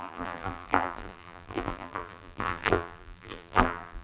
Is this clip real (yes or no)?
no